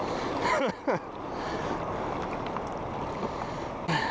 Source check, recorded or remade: remade